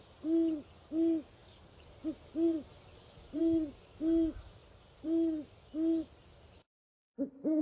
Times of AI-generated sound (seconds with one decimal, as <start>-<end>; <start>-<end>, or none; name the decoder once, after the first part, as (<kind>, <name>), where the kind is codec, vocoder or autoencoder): 1.4-3.4 (vocoder, BigVGAN v2); 4.6-6.3; 7.0-7.6